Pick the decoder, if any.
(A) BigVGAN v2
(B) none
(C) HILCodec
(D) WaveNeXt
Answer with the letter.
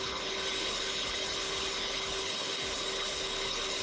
C